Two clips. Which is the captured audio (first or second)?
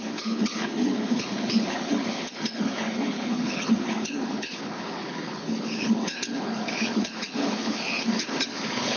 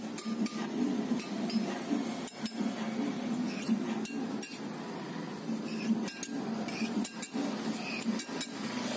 second